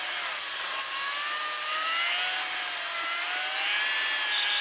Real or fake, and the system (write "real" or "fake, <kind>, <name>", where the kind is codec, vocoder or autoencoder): real